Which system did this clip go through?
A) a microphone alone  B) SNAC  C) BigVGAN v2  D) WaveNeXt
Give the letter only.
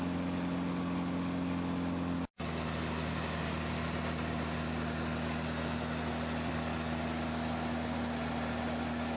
A